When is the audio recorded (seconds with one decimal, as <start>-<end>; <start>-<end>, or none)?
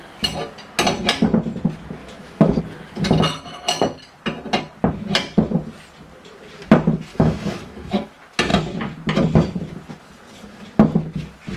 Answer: 0.0-2.0; 2.6-7.1; 8.1-11.6